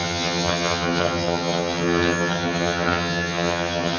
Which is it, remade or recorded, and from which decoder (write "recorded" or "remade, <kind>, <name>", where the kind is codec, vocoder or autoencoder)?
remade, vocoder, HiFi-GAN